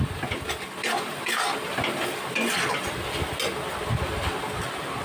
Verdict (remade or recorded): recorded